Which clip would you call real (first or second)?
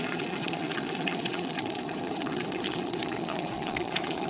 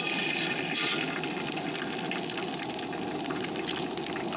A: second